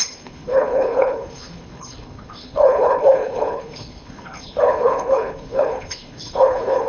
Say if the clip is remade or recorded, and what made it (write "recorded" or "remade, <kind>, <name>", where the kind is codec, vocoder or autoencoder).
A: remade, codec, HILCodec